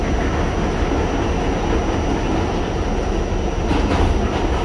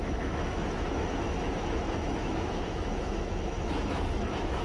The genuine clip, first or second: first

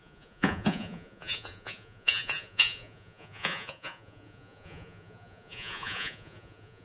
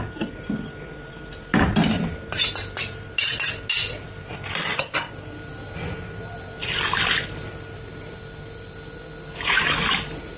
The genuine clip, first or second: second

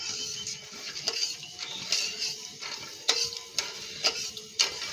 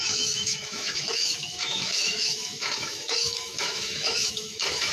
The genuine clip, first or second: first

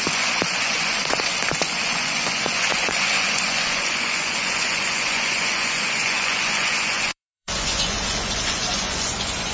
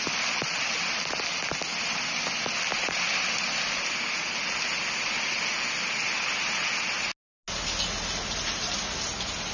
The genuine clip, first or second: second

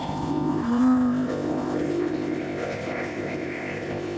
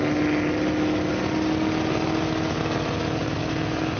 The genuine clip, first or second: second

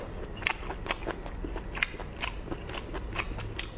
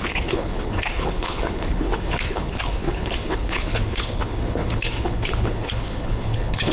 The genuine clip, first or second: first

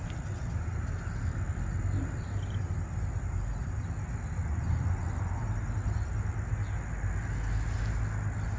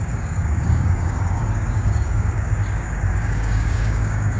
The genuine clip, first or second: first